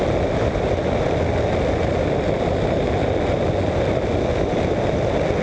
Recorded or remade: recorded